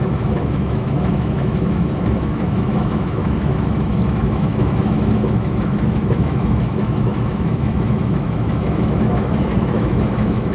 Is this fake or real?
fake